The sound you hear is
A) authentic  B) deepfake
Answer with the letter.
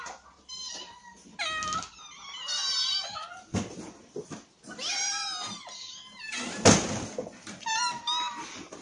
A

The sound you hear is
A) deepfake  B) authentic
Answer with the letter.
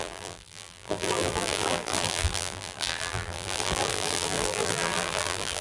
A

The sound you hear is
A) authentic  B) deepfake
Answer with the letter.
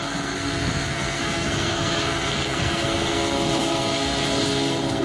B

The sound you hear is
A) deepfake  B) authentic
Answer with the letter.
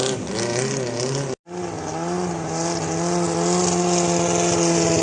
B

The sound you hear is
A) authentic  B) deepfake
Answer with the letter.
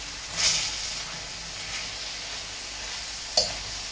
A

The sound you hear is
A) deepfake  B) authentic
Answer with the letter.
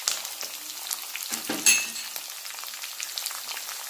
B